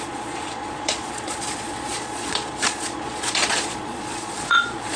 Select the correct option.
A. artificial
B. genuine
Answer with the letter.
A